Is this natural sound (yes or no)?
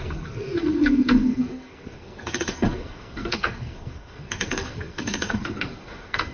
no